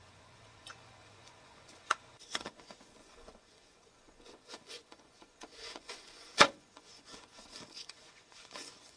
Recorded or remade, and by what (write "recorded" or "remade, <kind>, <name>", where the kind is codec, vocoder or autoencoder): remade, vocoder, Vocos